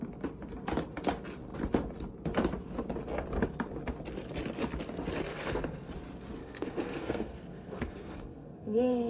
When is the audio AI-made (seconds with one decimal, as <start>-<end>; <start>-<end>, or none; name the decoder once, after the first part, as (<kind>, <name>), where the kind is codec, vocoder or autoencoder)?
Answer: 5.3-5.9 (codec, SNAC); 6.4-9.1